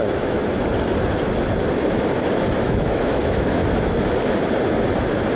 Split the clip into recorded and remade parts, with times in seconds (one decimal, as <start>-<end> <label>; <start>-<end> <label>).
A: 0.0-0.4 remade; 0.4-2.6 recorded; 2.6-3.6 remade; 3.6-5.4 recorded